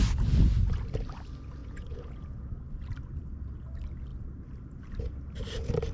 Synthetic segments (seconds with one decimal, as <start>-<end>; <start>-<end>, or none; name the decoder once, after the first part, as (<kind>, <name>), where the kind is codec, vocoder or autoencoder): 1.6-2.5 (vocoder, Vocos)